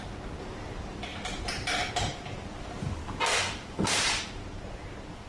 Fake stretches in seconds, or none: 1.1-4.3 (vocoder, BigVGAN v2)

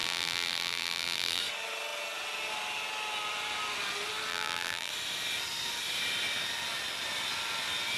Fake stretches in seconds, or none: 0.0-1.4 (vocoder, BigVGAN v2); 4.3-4.9

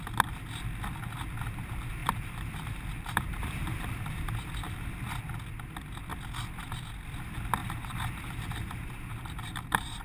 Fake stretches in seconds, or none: 2.0-4.9 (vocoder, BigVGAN v2); 7.6-10.0

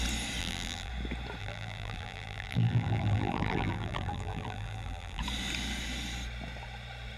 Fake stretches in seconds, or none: 0.4-0.9 (vocoder, BigVGAN v2); 1.4-5.2

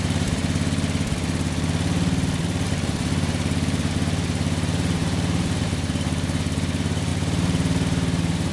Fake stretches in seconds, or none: 0.0-0.4 (vocoder, BigVGAN v2); 2.4-8.5

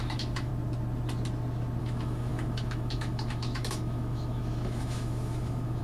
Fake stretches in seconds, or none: 0.0-0.5 (autoencoder, DAC-VAE); 1.8-5.8

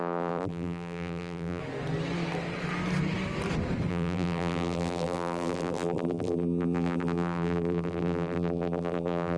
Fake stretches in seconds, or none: 0.0-1.6 (vocoder, BigVGAN v2); 3.9-9.4

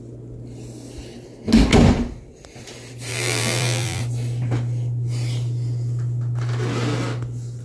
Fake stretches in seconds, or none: 3.1-4.0 (vocoder, BigVGAN v2)